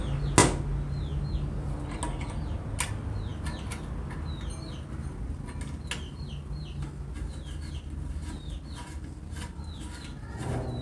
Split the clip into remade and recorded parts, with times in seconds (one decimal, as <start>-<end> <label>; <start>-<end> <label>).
0.0-10.8 recorded